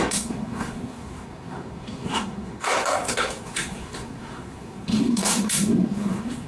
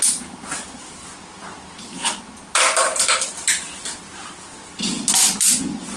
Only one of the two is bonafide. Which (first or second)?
second